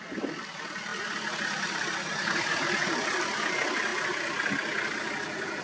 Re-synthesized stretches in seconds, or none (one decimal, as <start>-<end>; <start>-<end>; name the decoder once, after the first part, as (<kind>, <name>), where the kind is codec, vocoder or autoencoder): none